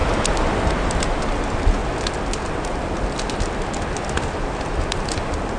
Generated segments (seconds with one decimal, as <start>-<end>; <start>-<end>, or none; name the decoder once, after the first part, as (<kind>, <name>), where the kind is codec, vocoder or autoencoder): none